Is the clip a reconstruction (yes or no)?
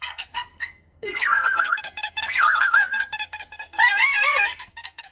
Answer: yes